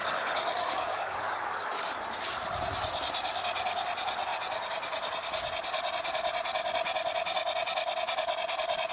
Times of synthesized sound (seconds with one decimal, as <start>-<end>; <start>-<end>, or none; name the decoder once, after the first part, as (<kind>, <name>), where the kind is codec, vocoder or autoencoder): 0.0-2.0 (codec, DAC)